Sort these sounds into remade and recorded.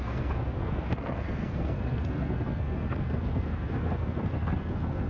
remade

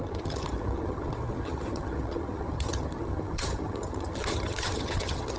remade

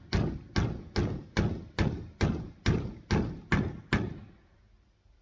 recorded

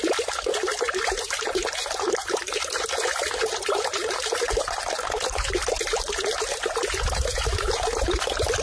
recorded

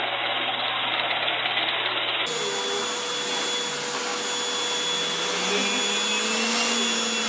recorded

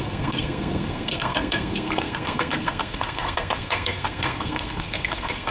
remade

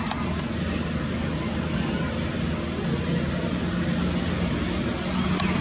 recorded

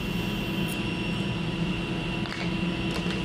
recorded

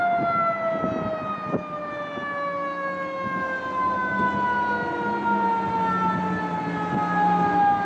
recorded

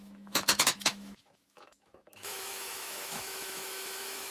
remade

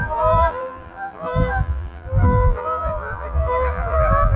remade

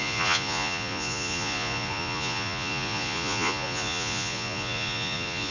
remade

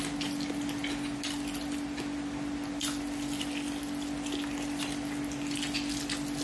recorded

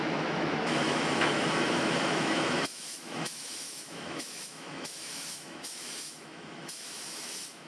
remade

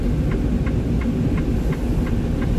recorded